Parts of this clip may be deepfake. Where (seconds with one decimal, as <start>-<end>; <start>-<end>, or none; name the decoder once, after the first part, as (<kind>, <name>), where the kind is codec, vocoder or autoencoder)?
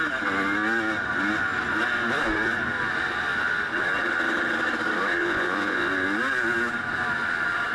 5.2-5.9 (vocoder, Vocos)